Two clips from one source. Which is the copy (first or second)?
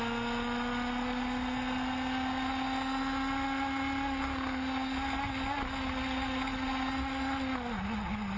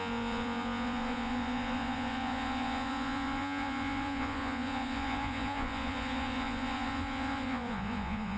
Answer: second